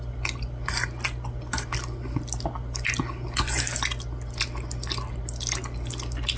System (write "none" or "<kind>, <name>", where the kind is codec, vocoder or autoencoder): none